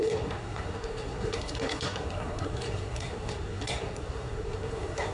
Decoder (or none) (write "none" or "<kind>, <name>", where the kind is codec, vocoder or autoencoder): codec, SNAC